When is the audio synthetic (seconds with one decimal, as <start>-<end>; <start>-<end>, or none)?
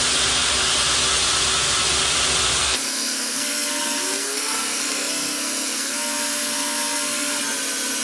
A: 2.6-7.4